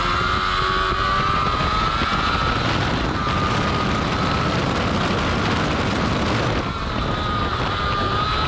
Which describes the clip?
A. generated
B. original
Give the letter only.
B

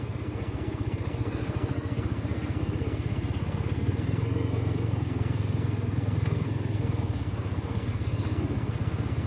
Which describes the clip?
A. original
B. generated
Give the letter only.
B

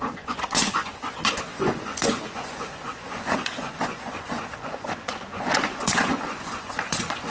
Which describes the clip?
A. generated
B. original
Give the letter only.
A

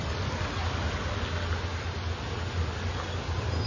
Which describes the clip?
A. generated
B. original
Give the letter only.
B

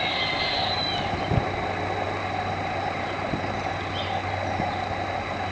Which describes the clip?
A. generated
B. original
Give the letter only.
B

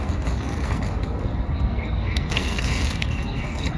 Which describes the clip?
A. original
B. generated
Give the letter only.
B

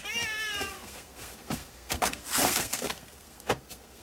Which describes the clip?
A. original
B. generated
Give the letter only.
B